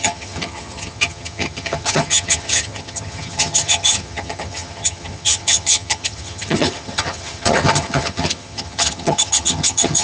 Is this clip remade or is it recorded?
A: remade